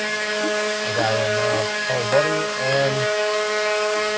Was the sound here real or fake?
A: fake